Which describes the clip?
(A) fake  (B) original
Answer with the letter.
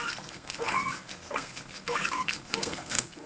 A